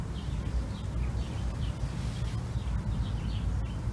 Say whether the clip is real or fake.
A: real